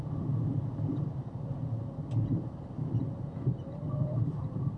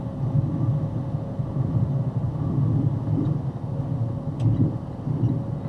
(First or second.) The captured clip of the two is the second